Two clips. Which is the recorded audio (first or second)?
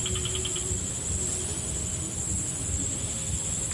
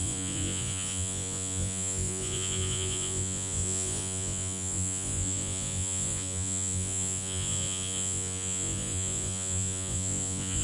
first